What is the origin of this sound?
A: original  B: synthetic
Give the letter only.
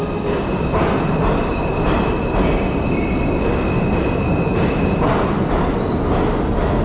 A